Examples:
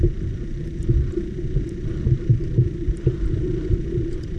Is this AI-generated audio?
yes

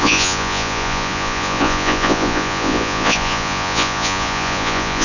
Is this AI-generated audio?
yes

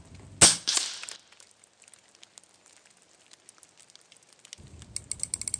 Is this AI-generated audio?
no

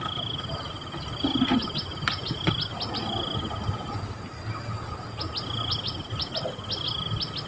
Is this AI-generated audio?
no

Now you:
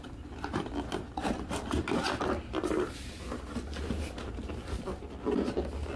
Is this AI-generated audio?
no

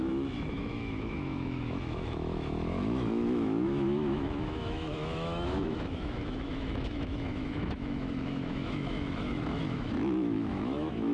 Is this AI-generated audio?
yes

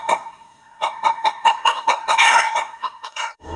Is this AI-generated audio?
yes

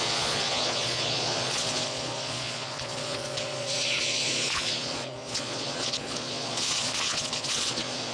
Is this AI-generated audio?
yes